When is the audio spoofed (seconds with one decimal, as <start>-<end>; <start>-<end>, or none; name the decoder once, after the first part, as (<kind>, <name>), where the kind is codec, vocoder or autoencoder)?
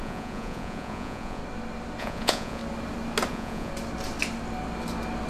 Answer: 0.0-1.4 (vocoder, Vocos); 2.0-2.6; 3.3-3.7